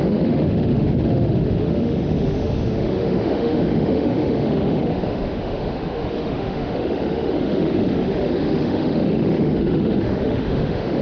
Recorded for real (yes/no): no